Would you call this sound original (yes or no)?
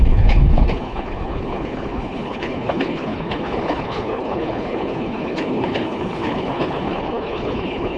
no